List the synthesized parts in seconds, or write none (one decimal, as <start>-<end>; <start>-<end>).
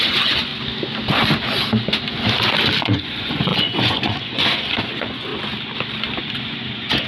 0.0-0.5; 2.8-5.3; 6.2-7.1